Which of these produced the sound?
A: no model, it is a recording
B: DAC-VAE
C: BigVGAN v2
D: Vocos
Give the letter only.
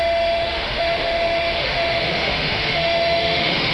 B